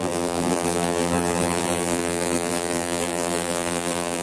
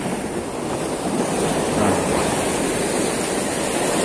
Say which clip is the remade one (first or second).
first